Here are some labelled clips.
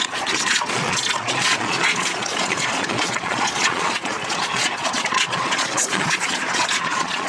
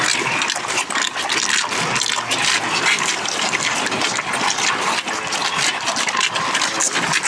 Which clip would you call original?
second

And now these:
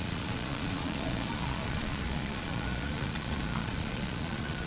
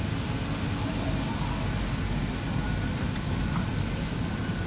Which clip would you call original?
second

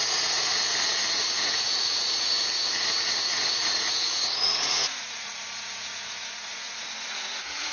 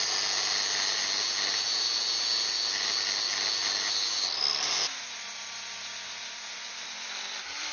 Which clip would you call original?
second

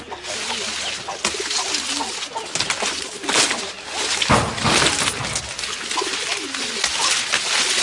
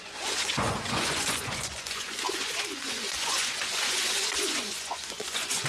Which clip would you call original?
first